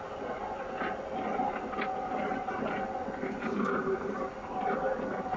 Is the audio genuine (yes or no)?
yes